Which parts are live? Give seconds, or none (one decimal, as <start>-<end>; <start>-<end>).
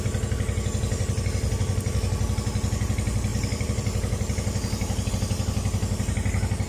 0.0-6.7